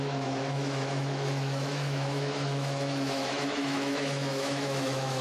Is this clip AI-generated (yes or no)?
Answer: yes